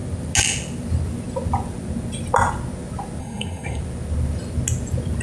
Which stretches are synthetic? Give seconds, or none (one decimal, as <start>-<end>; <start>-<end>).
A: 3.2-3.8

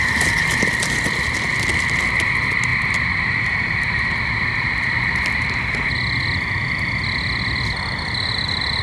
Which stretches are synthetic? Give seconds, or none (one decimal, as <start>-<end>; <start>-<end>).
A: none

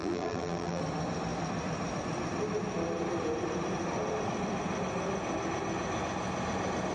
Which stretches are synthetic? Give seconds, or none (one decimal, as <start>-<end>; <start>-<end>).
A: 0.0-0.8

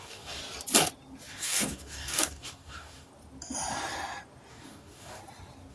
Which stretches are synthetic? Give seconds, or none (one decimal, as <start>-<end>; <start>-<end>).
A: 0.0-0.4; 1.3-3.1; 4.5-5.2

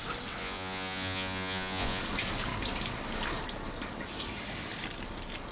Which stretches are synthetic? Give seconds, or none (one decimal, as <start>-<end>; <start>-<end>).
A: 0.4-2.0